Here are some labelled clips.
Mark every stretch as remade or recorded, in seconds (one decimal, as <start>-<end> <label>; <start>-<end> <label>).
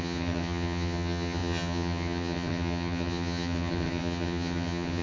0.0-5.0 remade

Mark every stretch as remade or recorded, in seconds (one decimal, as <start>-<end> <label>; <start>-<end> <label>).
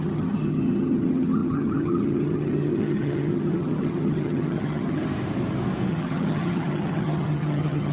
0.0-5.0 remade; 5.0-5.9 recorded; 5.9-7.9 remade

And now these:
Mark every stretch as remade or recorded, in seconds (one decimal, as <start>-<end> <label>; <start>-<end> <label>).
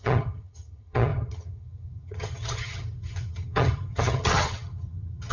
0.0-5.3 remade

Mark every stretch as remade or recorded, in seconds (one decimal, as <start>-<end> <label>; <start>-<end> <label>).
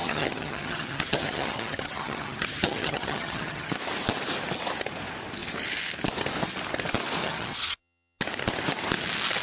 0.0-3.7 remade; 3.7-7.2 recorded; 7.2-8.2 remade; 8.2-9.4 recorded